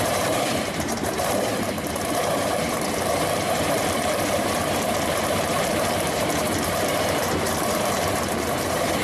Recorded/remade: remade